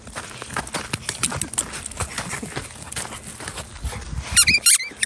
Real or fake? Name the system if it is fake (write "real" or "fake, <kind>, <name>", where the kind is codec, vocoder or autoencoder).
real